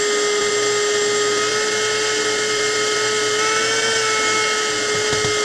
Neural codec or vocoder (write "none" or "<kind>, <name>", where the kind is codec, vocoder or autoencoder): none